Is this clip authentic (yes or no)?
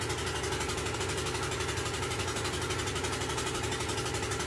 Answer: yes